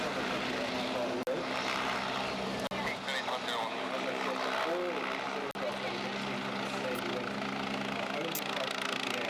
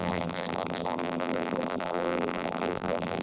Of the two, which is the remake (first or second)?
second